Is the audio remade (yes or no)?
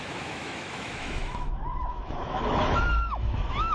yes